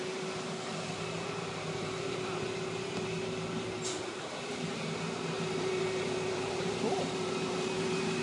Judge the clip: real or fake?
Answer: fake